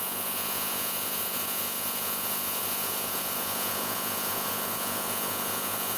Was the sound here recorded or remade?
remade